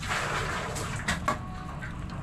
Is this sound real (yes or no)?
yes